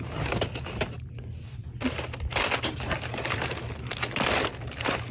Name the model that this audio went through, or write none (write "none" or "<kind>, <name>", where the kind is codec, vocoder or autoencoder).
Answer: none